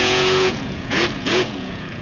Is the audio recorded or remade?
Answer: remade